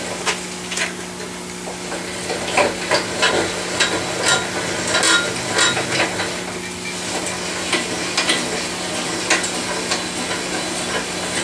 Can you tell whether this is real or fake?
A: real